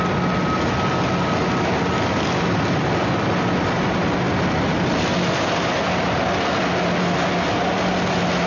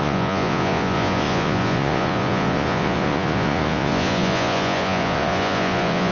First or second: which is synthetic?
second